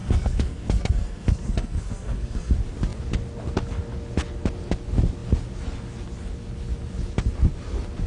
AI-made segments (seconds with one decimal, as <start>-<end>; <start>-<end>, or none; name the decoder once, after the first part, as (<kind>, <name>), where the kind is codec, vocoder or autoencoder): 0.0-2.5 (codec, SNAC)